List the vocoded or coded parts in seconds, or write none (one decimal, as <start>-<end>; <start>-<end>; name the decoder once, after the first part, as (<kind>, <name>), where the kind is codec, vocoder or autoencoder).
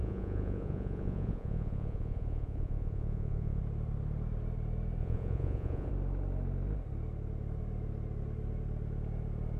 0.0-3.6 (vocoder, Vocos); 5.0-5.9